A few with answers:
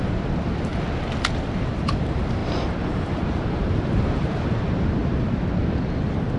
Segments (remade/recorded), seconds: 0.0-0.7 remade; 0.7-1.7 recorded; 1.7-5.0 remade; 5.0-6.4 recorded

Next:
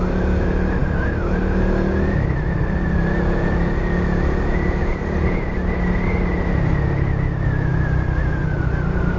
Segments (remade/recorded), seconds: 0.0-9.2 recorded

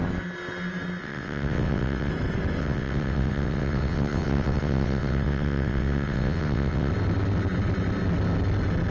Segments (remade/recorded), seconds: 0.0-1.0 recorded; 1.0-2.1 remade; 2.1-2.6 recorded; 2.6-6.9 remade; 6.9-8.9 recorded

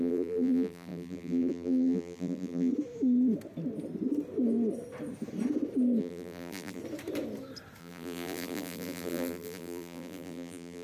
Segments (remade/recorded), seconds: 0.0-2.7 remade; 2.7-6.0 recorded; 6.0-6.8 remade; 6.8-7.8 recorded; 7.8-10.8 remade

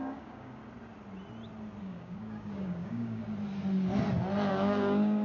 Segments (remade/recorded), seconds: 0.0-0.6 remade; 0.6-1.8 recorded; 1.8-3.2 remade; 3.2-4.5 recorded; 4.5-5.2 remade

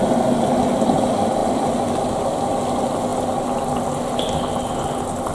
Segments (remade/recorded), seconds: 0.0-5.3 recorded

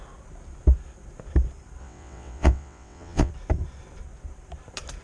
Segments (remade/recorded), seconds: 0.0-1.8 recorded; 1.8-3.3 remade; 3.3-5.0 recorded